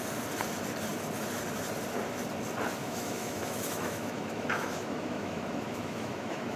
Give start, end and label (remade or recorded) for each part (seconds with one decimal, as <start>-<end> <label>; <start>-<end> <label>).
0.0-2.8 recorded; 2.8-6.6 remade